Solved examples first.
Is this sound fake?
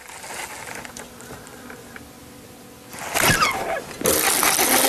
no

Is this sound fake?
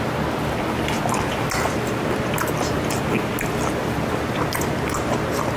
no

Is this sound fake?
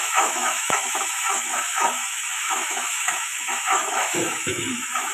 yes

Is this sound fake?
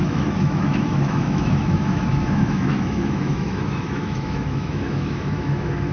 yes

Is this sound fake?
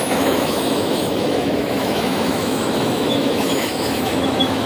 yes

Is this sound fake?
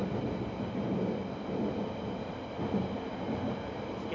no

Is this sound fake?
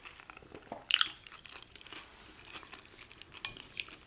no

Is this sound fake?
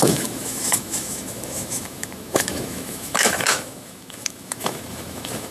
yes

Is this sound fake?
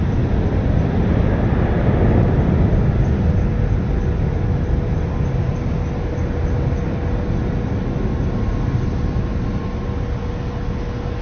no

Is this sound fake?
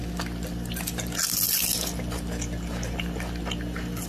no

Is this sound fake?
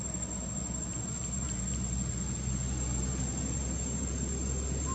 no